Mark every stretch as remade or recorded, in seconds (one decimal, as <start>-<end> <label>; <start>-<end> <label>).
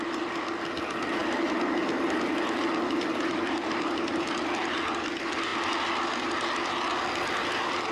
0.0-7.9 recorded